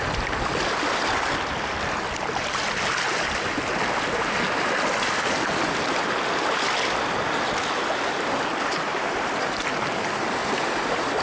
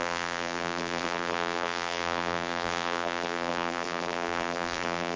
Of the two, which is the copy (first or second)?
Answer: second